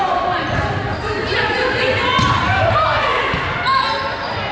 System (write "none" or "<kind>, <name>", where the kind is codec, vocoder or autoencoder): none